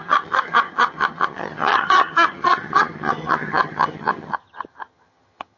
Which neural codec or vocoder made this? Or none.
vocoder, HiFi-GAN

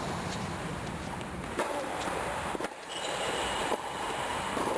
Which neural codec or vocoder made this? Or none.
vocoder, BigVGAN v2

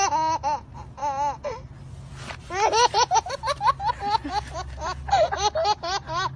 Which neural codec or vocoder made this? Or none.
none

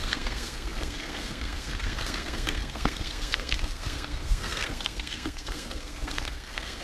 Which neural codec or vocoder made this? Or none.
codec, SNAC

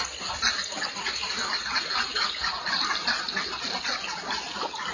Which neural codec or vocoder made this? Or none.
none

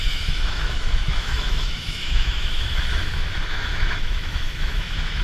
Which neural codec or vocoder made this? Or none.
autoencoder, DAC-VAE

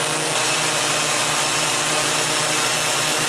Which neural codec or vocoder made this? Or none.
none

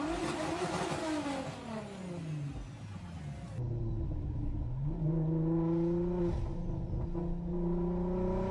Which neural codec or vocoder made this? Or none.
none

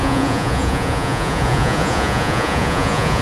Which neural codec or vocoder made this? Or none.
vocoder, Vocos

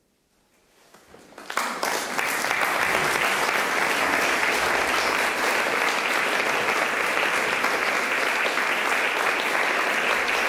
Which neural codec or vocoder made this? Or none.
none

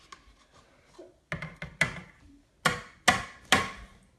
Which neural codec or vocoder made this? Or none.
none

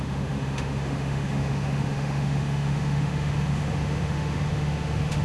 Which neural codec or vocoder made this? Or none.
autoencoder, DAC-VAE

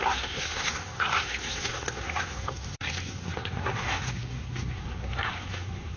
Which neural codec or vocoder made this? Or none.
codec, SNAC